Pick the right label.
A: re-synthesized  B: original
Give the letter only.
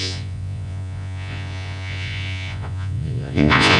A